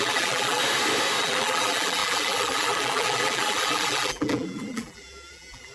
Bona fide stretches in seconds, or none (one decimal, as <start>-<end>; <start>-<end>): 0.6-1.2